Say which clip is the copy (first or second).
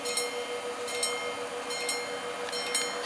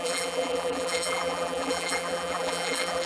second